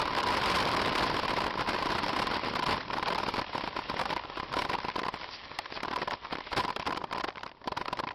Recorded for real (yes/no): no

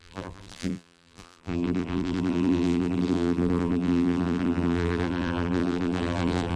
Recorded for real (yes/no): no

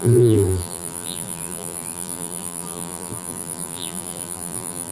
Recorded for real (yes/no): no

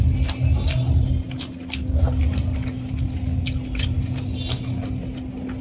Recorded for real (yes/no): yes